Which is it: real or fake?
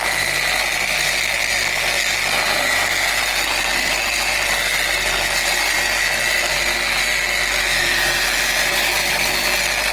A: real